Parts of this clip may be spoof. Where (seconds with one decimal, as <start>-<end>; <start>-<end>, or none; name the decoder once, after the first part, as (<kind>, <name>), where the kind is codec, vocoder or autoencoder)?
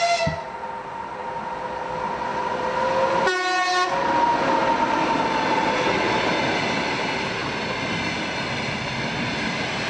none